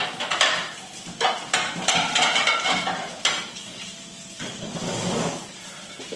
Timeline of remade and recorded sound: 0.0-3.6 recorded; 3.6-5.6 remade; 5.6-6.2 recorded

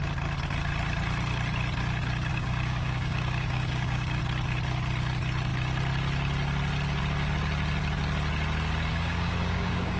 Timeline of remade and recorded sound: 0.0-2.3 recorded; 2.3-4.2 remade; 4.2-8.9 recorded; 8.9-10.0 remade

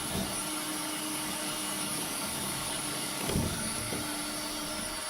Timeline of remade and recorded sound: 0.0-0.8 recorded; 0.8-3.9 remade; 3.9-5.1 recorded

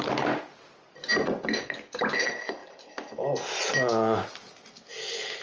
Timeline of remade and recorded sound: 0.0-5.4 recorded

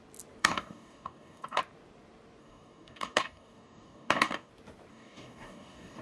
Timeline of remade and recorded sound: 0.0-0.4 recorded; 0.4-1.6 remade; 1.6-2.4 recorded; 2.4-4.5 remade; 4.5-4.9 recorded; 4.9-6.0 remade

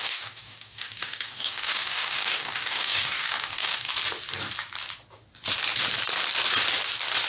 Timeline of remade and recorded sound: 0.0-3.9 remade; 3.9-7.3 recorded